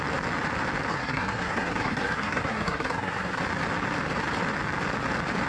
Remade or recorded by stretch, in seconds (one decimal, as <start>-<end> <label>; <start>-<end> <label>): 0.0-0.9 recorded; 0.9-3.4 remade; 3.4-5.5 recorded